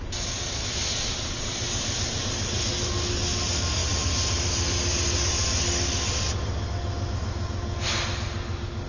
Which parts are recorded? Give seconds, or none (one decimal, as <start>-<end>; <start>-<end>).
0.0-8.9